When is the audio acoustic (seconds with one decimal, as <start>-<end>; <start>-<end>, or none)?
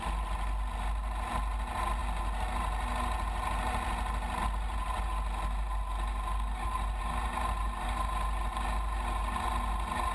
0.0-10.1